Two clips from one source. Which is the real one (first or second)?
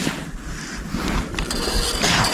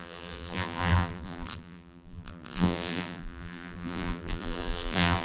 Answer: first